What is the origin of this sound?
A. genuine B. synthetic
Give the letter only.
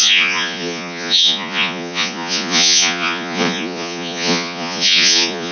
B